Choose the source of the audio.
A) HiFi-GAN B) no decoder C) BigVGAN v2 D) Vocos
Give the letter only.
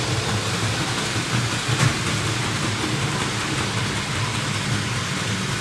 B